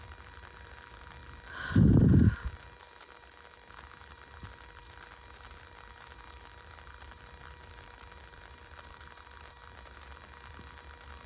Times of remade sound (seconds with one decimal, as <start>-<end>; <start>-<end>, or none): 0.0-11.3